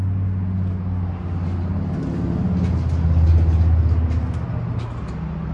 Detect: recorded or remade recorded